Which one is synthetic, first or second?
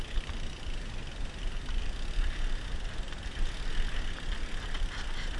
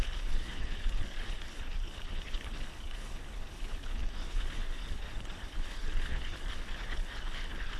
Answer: second